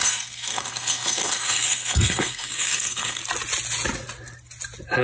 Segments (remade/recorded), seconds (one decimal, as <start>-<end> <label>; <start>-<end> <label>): 0.0-3.2 remade; 3.2-5.0 recorded

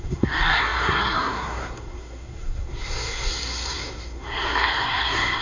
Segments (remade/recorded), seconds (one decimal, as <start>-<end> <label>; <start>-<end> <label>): 0.0-5.4 remade

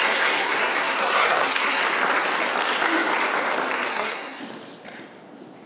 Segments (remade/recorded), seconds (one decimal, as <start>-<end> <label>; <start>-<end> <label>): 0.0-1.8 remade; 1.8-3.9 recorded; 3.9-4.4 remade; 4.4-5.7 recorded

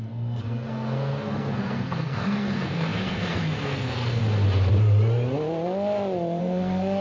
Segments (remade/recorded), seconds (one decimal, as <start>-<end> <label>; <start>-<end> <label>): 0.0-4.2 remade; 4.2-6.4 recorded; 6.4-7.0 remade

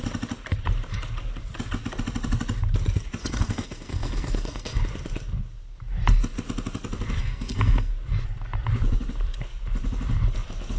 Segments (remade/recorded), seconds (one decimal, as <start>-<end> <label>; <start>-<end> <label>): 0.0-3.2 recorded; 3.2-4.8 remade; 4.8-7.2 recorded; 7.2-7.9 remade; 7.9-10.8 recorded

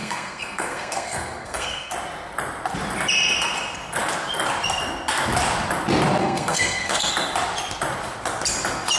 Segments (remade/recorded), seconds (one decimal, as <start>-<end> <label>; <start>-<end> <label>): 0.0-1.9 remade; 1.9-6.2 recorded; 6.2-7.1 remade; 7.1-9.0 recorded

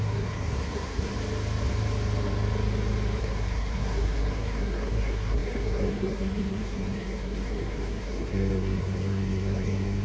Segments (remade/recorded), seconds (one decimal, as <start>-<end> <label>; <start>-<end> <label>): 0.0-1.1 remade; 1.1-3.2 recorded; 3.2-10.0 remade

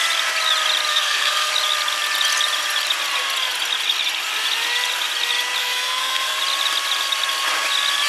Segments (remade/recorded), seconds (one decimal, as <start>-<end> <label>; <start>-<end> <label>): 0.0-0.9 recorded; 0.9-1.5 remade; 1.5-5.6 recorded; 5.6-6.4 remade; 6.4-8.1 recorded